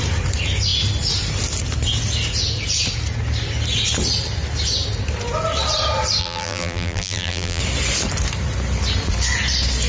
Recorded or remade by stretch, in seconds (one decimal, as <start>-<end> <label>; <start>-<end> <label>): 0.0-6.2 recorded; 6.2-7.6 remade; 7.6-9.9 recorded